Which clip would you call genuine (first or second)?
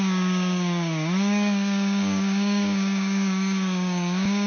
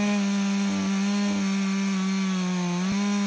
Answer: second